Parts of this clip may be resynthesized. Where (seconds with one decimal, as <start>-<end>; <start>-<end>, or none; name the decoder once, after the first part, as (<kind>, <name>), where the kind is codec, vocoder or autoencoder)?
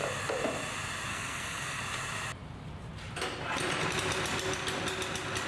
1.1-1.8 (codec, SNAC)